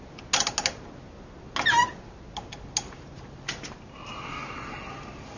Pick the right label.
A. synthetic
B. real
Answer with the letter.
B